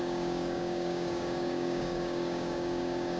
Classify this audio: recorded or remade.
remade